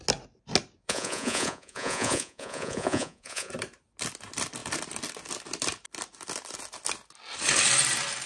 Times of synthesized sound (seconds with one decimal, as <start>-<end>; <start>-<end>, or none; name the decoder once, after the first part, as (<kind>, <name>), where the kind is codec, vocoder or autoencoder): 0.8-3.5 (vocoder, Vocos)